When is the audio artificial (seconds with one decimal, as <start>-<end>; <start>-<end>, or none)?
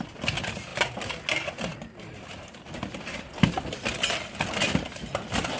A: none